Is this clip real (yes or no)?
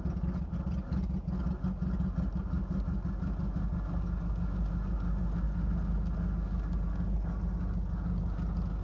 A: yes